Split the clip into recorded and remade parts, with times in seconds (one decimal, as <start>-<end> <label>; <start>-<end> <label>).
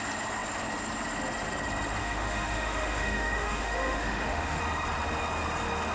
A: 0.0-2.0 recorded; 2.0-4.6 remade; 4.6-5.9 recorded